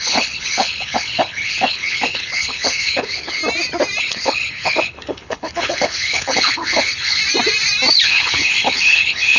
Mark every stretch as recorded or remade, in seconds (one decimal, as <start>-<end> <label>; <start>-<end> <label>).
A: 0.0-3.4 remade; 3.4-4.0 recorded; 4.0-7.2 remade; 7.2-7.9 recorded; 7.9-9.4 remade